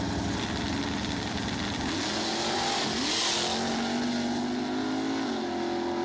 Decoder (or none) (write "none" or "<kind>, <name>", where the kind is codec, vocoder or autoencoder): none